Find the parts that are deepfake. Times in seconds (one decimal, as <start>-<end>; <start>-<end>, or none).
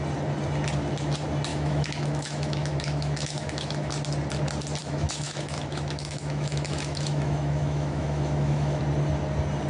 1.5-3.9; 4.8-8.8